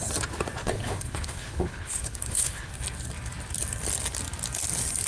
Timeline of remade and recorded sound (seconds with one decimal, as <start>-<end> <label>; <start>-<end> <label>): 0.0-0.6 recorded; 0.6-2.7 remade; 2.7-5.1 recorded

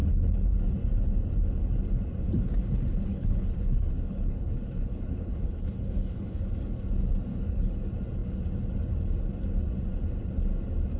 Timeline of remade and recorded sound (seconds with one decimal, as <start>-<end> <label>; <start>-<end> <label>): 0.0-0.6 remade; 0.6-3.1 recorded; 3.1-6.5 remade; 6.5-7.3 recorded; 7.3-7.8 remade; 7.8-11.0 recorded

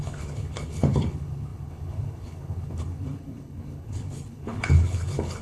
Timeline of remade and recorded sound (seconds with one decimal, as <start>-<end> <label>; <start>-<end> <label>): 0.0-5.4 remade

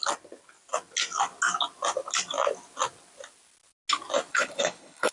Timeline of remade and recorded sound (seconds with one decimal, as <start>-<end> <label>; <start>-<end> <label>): 0.0-4.3 recorded; 4.3-5.1 remade

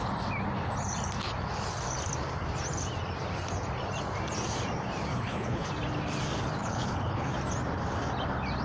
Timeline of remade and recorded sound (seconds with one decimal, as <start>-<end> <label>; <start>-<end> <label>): 0.0-5.1 recorded; 5.1-5.7 remade; 5.7-6.6 recorded; 6.6-7.3 remade; 7.3-8.6 recorded

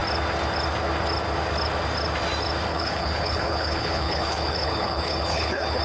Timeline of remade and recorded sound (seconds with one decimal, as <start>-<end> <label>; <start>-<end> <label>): 0.0-2.7 recorded; 2.7-5.8 remade

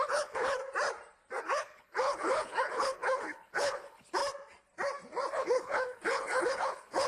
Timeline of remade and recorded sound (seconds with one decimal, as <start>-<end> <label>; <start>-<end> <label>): 0.0-0.6 remade; 0.6-1.4 recorded; 1.4-4.2 remade; 4.2-5.3 recorded; 5.3-7.1 remade

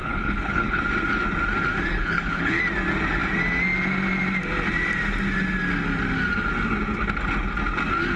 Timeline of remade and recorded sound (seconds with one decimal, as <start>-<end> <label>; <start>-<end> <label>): 0.0-0.8 remade; 0.8-1.9 recorded; 1.9-2.6 remade; 2.6-8.2 recorded